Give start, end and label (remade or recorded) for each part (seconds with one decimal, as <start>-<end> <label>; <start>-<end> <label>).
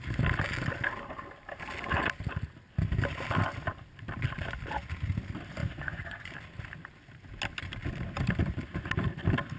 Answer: 0.0-5.6 recorded; 5.6-6.3 remade; 6.3-9.6 recorded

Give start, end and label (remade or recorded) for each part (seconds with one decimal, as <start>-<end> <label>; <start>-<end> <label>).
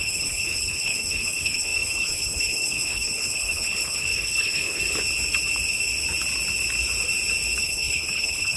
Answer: 0.0-4.8 remade; 4.8-7.6 recorded; 7.6-8.6 remade